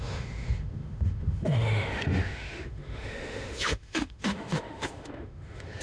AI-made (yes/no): yes